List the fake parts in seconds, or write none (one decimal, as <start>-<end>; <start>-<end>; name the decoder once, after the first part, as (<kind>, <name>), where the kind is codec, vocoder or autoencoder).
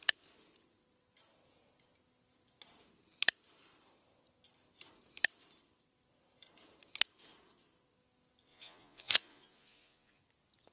8.5-10.2 (vocoder, Vocos)